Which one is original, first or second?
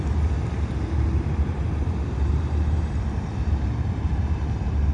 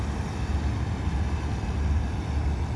second